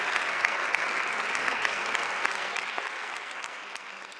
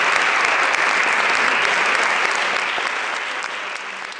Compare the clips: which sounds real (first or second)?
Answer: second